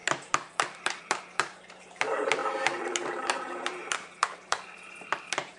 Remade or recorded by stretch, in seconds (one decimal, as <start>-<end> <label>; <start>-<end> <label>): 0.0-5.6 remade